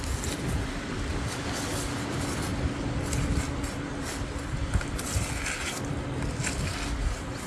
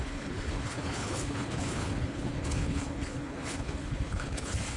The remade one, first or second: second